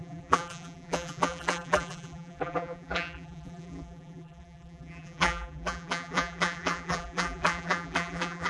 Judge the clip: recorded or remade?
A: remade